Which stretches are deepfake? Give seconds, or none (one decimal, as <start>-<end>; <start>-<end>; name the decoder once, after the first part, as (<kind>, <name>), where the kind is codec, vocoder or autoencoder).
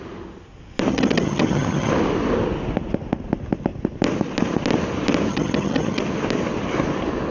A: 0.9-1.9 (vocoder, HiFi-GAN); 5.3-6.0